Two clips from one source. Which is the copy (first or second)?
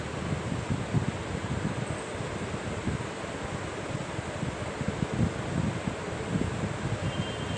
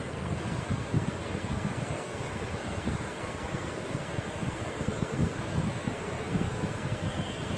second